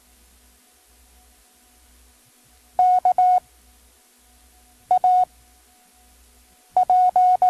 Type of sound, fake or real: real